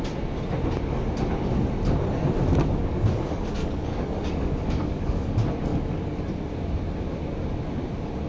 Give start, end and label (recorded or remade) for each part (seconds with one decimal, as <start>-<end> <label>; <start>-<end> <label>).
0.0-2.8 recorded; 2.8-5.3 remade; 5.3-5.7 recorded; 5.7-6.2 remade; 6.2-8.3 recorded